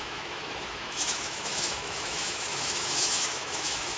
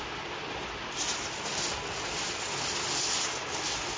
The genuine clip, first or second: second